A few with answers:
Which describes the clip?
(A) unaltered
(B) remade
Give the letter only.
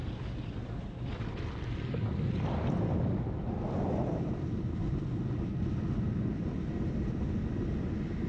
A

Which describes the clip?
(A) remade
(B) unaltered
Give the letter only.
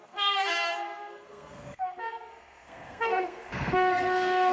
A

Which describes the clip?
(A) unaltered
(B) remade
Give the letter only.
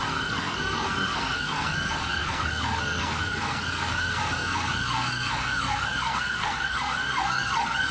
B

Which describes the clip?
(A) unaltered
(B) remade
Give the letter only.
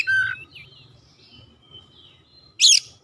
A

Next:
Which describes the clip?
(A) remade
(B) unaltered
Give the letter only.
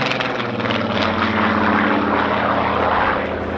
B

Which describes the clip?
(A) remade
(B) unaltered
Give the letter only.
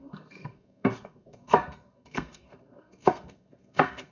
A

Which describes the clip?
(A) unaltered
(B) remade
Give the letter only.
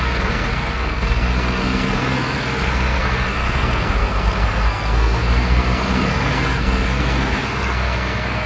B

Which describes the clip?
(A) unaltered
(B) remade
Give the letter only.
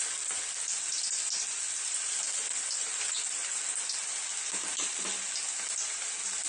A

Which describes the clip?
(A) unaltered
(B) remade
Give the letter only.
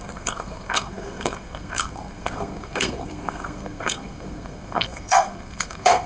B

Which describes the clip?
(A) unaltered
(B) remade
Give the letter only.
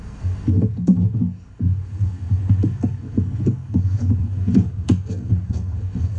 B